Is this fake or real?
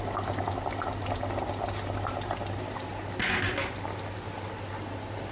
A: real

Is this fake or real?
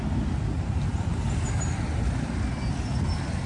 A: real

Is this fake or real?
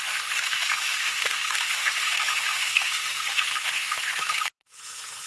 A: fake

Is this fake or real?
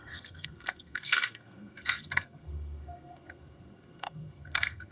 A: fake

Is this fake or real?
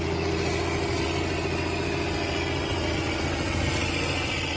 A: real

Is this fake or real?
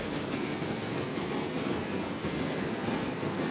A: fake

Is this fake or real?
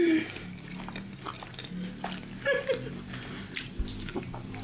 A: real